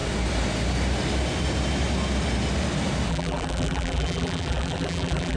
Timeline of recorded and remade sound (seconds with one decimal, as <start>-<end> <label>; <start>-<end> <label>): 0.0-3.1 recorded; 3.1-5.4 remade